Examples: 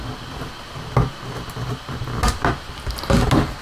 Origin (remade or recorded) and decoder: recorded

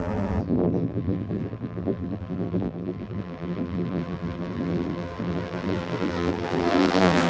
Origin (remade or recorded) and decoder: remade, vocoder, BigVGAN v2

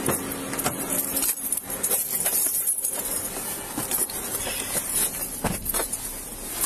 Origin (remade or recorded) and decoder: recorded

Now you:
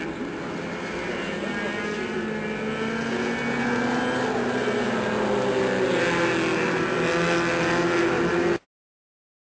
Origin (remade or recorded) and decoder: recorded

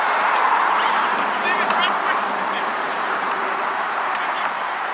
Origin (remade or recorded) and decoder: remade, vocoder, BigVGAN v2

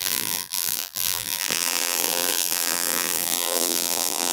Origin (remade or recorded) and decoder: remade, vocoder, BigVGAN v2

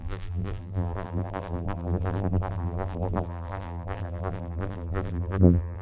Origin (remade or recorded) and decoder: remade, vocoder, BigVGAN v2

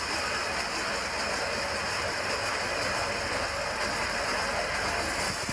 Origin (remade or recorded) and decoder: remade, vocoder, BigVGAN v2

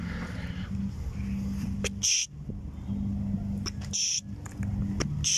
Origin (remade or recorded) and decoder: recorded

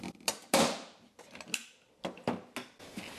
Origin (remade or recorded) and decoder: recorded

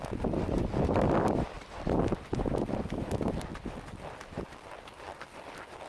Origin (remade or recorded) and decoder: remade, vocoder, BigVGAN v2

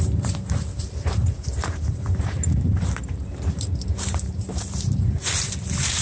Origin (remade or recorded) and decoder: remade, vocoder, BigVGAN v2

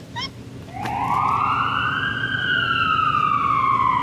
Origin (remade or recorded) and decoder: recorded